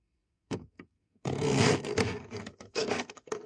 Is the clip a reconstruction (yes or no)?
yes